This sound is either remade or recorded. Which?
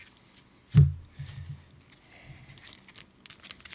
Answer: recorded